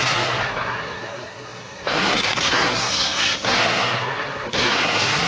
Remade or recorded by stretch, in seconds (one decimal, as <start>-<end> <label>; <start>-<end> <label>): 0.0-5.3 remade